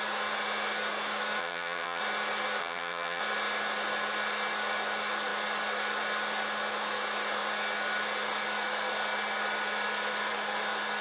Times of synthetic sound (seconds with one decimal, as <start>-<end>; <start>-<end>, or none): 1.4-2.0; 2.6-3.2